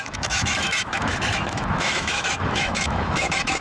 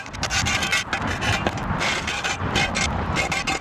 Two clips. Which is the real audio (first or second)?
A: second